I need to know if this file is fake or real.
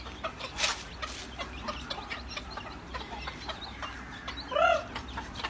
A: real